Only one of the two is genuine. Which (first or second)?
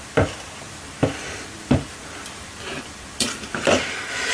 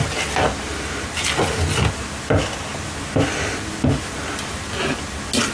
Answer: second